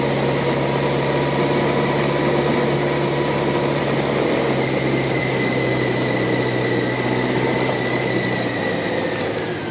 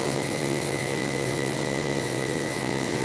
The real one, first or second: first